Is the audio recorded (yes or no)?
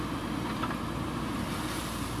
yes